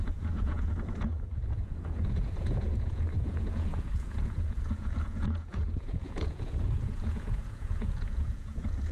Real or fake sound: fake